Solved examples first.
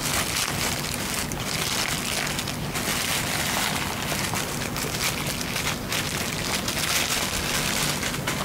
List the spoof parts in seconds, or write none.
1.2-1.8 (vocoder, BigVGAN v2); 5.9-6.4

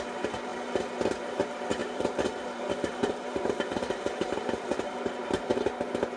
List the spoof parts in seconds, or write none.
1.8-5.3 (vocoder, BigVGAN v2)

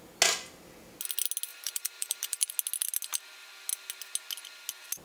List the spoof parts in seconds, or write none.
1.5-2.5 (vocoder, BigVGAN v2)

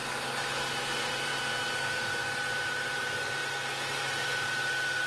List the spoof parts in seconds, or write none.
0.8-1.3 (vocoder, BigVGAN v2); 1.9-3.4; 4.0-5.1

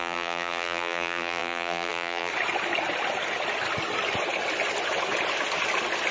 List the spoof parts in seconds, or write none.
0.0-2.3 (vocoder, BigVGAN v2)

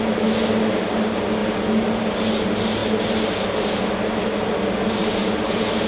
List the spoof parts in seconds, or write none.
none

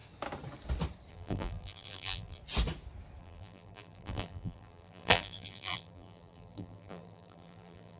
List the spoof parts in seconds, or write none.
1.1-2.4 (vocoder, BigVGAN v2); 3.2-8.0

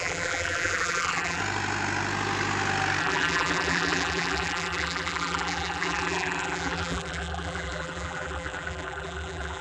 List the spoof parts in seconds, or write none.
0.0-1.4 (vocoder, BigVGAN v2); 3.0-9.6